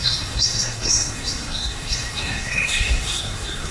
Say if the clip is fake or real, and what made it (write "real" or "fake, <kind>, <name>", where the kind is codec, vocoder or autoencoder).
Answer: fake, codec, SNAC